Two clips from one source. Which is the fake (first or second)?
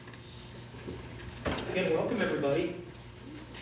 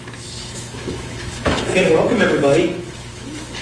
second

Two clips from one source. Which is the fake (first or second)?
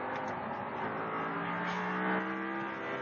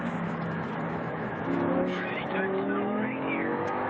second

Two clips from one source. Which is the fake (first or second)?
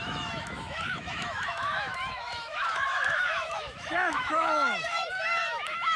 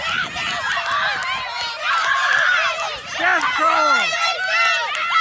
first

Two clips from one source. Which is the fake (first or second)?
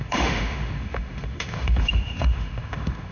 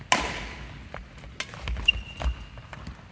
first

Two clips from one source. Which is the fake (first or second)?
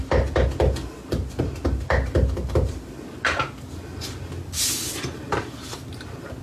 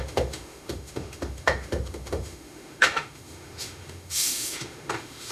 second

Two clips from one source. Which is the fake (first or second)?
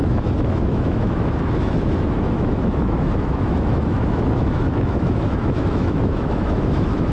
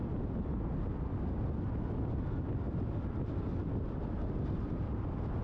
first